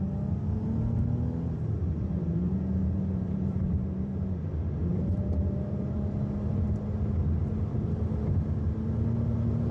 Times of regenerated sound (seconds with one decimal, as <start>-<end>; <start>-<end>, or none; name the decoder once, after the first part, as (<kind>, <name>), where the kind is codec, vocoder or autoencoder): 2.8-4.2 (vocoder, BigVGAN v2); 4.9-6.0